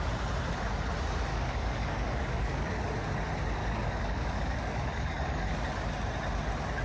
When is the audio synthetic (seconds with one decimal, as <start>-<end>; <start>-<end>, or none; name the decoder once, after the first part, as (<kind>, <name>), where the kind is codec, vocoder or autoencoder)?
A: 1.3-2.7 (codec, DAC); 3.6-5.6